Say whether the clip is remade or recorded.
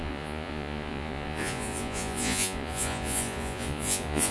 remade